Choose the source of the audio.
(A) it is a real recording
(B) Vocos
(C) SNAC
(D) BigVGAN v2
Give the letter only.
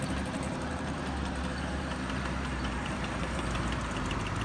D